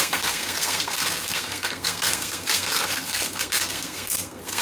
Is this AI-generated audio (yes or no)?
yes